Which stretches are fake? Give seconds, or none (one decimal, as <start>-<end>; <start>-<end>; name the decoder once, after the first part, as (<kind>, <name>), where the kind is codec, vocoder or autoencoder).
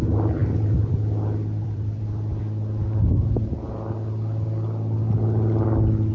0.4-2.4 (vocoder, BigVGAN v2)